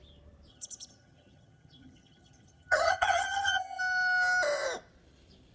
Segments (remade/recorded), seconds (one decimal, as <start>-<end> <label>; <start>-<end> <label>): 0.0-0.5 recorded; 0.5-3.8 remade; 3.8-5.5 recorded